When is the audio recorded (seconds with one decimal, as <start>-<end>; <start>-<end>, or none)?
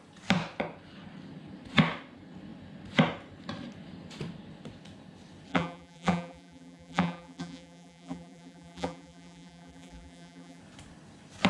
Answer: 0.0-5.5; 10.6-11.5